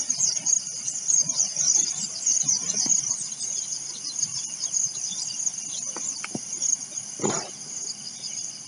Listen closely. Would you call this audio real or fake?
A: real